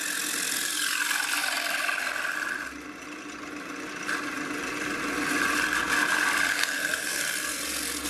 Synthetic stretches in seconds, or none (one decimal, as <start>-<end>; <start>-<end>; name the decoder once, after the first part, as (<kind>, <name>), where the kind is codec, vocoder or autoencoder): 6.5-7.6 (codec, SNAC)